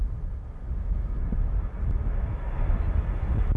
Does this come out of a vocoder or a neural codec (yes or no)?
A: no